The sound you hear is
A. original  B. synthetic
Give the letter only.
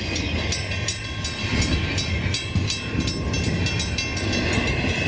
A